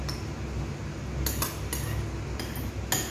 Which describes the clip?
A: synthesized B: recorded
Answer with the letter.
B